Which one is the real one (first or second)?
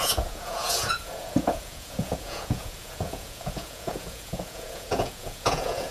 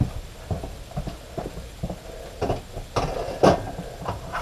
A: second